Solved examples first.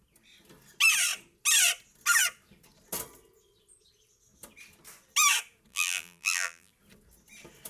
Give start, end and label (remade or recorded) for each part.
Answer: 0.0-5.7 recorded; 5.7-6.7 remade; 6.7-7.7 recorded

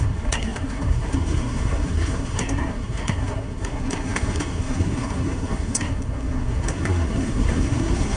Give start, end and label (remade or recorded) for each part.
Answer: 0.0-8.2 remade